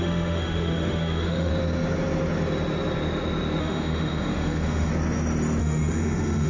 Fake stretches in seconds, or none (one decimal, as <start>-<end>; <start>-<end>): 0.0-1.5; 3.6-4.9; 5.6-6.5